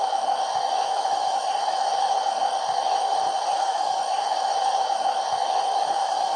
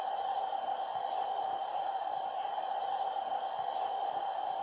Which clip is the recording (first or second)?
second